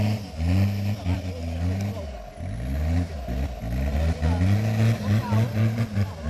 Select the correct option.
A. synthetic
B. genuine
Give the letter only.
B